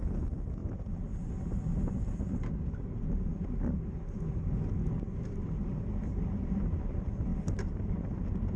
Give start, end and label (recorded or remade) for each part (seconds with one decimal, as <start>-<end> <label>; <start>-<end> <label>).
0.0-8.6 recorded